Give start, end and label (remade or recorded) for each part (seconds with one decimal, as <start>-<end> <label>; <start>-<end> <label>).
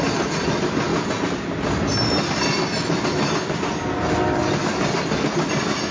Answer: 0.0-5.9 recorded